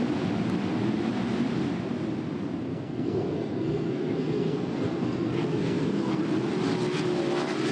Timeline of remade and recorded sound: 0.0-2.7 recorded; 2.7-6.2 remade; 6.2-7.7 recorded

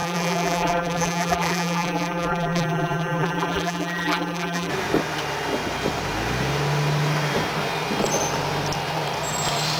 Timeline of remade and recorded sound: 0.0-4.7 remade; 4.7-9.8 recorded

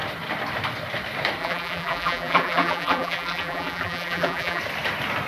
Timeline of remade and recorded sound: 0.0-1.4 recorded; 1.4-4.6 remade; 4.6-5.3 recorded

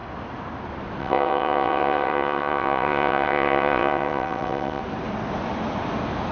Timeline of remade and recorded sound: 0.0-1.0 recorded; 1.0-4.8 remade; 4.8-6.3 recorded

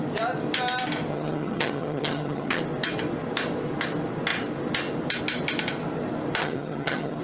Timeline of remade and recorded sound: 0.0-1.1 recorded; 1.1-2.6 remade; 2.6-6.4 recorded; 6.4-7.2 remade